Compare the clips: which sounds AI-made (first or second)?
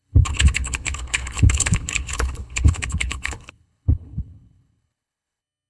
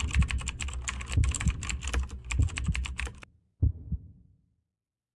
first